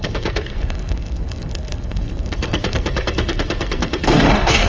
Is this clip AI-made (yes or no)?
yes